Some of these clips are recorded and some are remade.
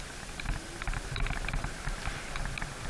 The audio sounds recorded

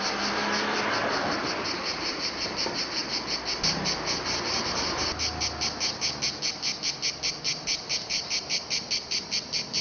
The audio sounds recorded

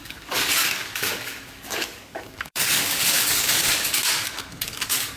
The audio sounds remade